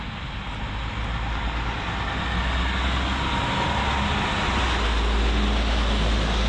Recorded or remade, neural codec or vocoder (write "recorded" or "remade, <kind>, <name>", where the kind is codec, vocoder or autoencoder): recorded